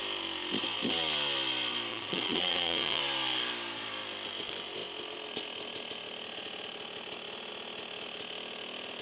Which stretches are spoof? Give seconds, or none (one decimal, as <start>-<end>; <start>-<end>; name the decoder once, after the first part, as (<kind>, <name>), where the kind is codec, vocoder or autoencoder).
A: 1.9-3.0 (vocoder, Vocos)

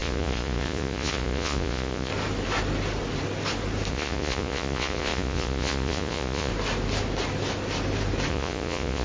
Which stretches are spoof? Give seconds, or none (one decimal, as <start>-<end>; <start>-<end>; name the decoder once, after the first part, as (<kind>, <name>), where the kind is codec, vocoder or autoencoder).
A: 0.0-2.1 (vocoder, Vocos); 3.9-6.5; 8.3-9.0

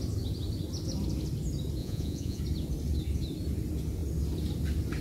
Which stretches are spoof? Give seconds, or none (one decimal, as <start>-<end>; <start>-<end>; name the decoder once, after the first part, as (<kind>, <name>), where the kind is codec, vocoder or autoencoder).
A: 1.8-2.4 (vocoder, Vocos)

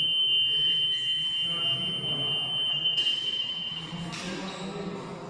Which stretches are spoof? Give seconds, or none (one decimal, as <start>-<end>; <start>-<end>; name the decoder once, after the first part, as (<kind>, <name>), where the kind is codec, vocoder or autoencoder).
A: 2.7-3.9 (vocoder, Vocos)

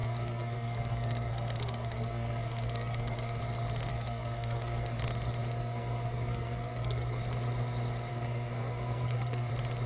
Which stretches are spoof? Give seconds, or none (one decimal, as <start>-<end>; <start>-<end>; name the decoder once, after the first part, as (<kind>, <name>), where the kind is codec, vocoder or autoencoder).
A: 0.0-3.4 (codec, SNAC); 3.9-5.0; 5.5-7.2; 8.1-9.5

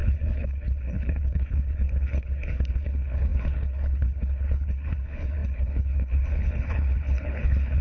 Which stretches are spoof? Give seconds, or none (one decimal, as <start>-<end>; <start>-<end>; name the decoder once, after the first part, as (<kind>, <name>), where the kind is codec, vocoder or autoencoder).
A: 0.0-7.8 (codec, HILCodec)

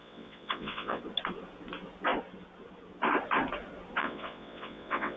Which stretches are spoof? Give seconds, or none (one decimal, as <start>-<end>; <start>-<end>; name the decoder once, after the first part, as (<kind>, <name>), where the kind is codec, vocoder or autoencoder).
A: 0.0-1.0 (vocoder, WaveNeXt); 4.0-5.2

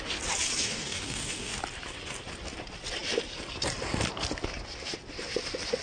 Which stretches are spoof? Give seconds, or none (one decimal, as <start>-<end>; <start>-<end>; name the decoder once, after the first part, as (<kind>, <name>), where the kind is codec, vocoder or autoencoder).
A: 0.6-1.6 (codec, DAC)